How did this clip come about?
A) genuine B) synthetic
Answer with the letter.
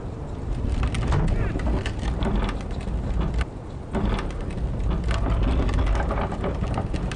A